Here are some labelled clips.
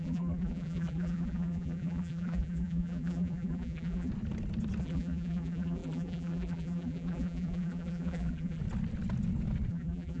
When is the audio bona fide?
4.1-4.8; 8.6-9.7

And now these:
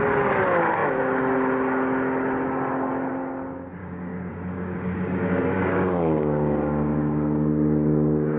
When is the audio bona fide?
0.0-3.8

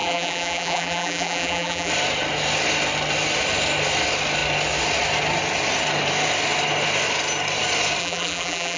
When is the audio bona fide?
1.9-8.0

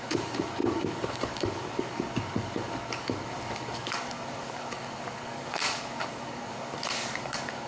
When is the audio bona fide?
none

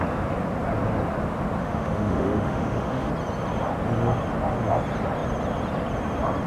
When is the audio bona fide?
0.0-1.6; 3.1-6.5

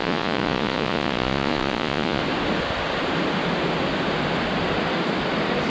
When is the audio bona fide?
2.2-5.7

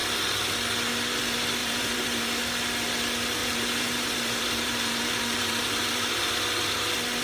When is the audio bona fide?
0.0-1.6; 2.4-3.4; 6.3-7.2